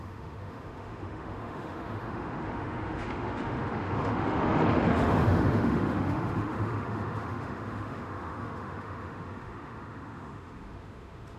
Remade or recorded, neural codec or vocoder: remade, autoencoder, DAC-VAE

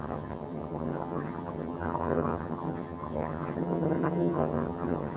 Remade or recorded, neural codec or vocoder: remade, vocoder, HiFi-GAN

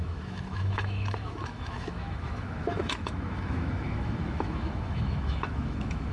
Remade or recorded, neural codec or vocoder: remade, autoencoder, DAC-VAE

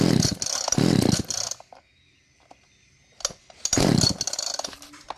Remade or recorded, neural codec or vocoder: recorded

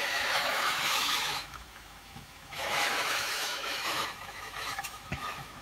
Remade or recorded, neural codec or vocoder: remade, autoencoder, DAC-VAE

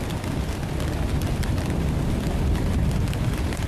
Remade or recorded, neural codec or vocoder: recorded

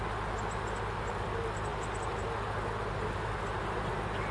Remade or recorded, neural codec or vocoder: recorded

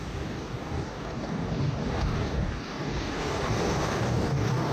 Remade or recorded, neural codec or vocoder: remade, codec, DAC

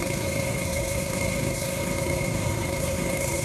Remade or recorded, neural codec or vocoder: remade, codec, SNAC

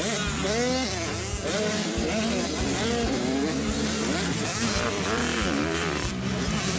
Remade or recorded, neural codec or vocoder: recorded